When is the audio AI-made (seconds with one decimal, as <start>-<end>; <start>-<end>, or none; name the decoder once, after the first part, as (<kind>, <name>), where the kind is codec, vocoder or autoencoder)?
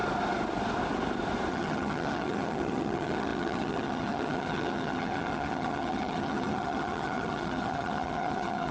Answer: 1.5-8.7 (vocoder, HiFi-GAN)